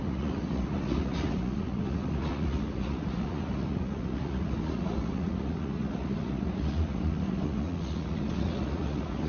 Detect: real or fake fake